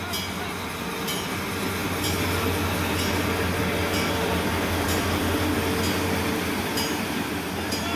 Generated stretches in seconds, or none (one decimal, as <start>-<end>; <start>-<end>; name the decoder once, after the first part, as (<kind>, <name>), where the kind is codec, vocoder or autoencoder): none